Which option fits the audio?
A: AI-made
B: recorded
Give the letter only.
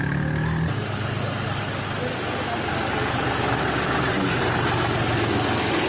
B